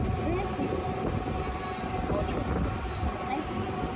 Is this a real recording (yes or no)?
yes